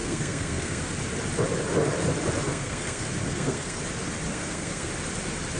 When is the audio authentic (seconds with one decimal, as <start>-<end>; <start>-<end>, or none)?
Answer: 0.8-2.5; 3.8-4.3; 4.9-5.6